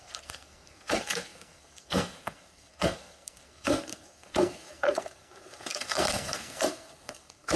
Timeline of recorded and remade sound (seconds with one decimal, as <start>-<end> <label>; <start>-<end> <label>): 0.0-7.6 remade